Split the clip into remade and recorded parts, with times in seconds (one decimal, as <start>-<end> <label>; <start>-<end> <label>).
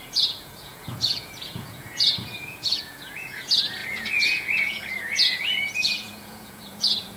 0.0-7.2 remade